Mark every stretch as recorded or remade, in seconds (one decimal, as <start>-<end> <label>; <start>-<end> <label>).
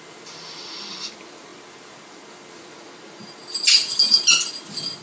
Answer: 0.0-5.0 recorded